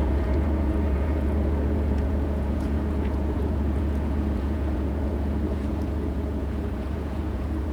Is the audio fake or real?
fake